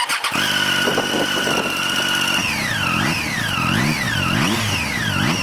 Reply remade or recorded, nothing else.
recorded